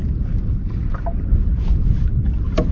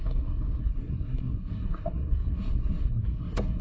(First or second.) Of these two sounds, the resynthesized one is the second